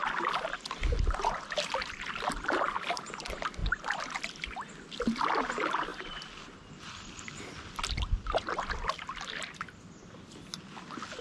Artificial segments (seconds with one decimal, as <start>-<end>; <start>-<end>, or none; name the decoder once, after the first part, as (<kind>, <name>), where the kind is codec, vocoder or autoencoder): none